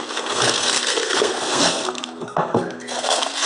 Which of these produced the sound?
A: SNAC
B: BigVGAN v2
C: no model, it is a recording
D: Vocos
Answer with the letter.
A